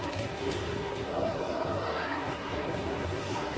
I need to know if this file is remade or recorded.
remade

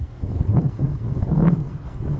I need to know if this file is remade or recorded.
remade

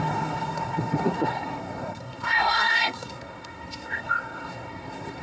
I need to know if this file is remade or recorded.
remade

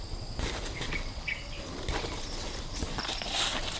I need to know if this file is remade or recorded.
recorded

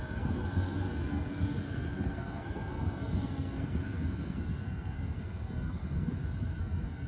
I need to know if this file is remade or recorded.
remade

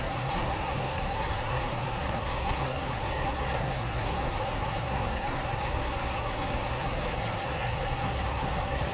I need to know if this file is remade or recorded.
remade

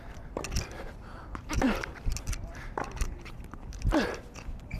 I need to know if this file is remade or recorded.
recorded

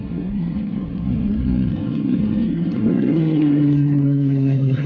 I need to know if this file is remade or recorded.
remade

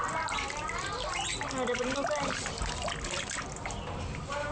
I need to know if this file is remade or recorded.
recorded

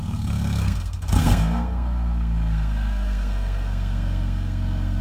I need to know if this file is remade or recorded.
remade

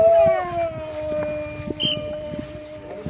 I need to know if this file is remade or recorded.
recorded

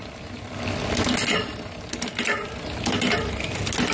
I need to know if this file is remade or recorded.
recorded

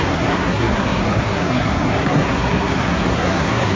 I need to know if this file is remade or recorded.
remade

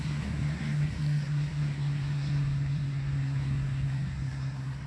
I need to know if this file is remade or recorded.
remade